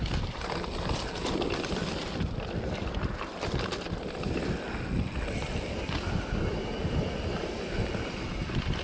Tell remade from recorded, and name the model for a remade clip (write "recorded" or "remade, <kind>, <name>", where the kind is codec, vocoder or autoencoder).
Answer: recorded